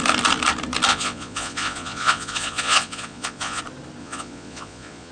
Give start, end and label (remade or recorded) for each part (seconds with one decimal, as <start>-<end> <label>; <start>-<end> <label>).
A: 0.0-0.9 recorded; 0.9-3.6 remade; 3.6-4.0 recorded; 4.0-5.1 remade